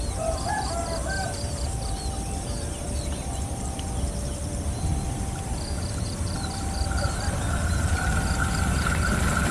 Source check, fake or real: fake